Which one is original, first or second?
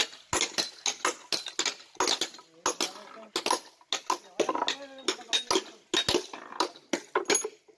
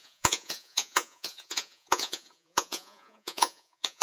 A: first